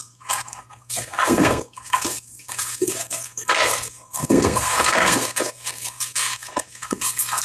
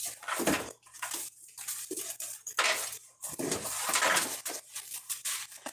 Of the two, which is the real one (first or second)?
second